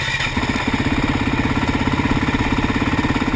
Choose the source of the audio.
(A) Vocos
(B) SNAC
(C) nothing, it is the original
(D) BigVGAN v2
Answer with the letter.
C